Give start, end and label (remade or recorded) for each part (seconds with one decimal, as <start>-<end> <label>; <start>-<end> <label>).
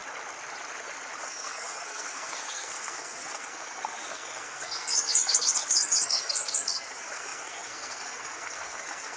0.0-1.2 recorded; 1.2-9.2 remade